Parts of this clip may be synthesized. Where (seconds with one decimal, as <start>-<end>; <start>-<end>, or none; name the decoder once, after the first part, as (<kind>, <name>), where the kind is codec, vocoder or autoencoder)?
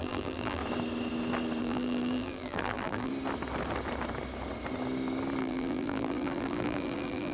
0.0-0.6 (vocoder, BigVGAN v2); 1.6-3.1; 5.4-7.3